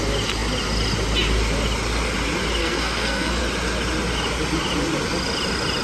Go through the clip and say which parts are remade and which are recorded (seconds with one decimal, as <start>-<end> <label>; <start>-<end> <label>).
0.0-2.6 recorded; 2.6-3.4 remade; 3.4-5.8 recorded